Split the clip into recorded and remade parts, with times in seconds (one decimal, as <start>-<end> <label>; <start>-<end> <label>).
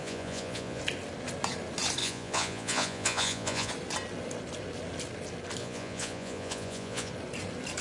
0.0-0.8 remade; 0.8-2.0 recorded; 2.0-3.7 remade; 3.7-5.6 recorded; 5.6-7.1 remade; 7.1-7.8 recorded